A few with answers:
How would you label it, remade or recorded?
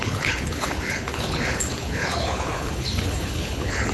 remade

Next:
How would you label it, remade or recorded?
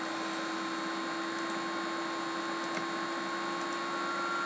recorded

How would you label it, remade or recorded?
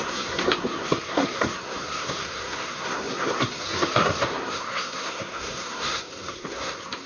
remade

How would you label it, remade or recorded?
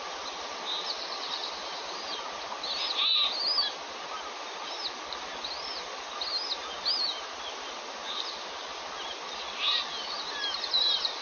recorded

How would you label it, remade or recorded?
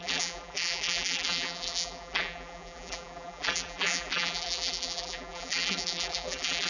remade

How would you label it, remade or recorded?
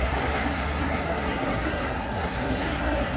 remade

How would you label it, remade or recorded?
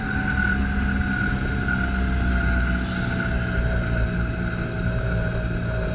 recorded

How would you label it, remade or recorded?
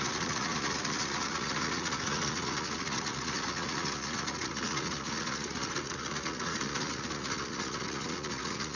remade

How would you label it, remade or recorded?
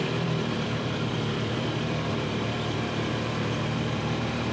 remade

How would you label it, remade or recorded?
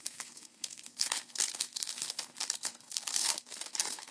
remade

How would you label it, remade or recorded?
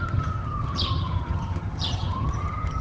remade